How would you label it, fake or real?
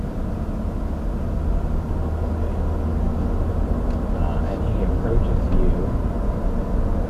real